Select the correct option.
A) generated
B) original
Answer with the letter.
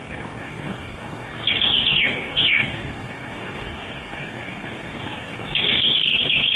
A